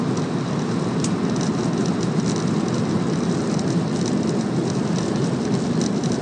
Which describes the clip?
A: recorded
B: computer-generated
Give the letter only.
A